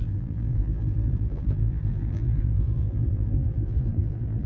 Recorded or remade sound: remade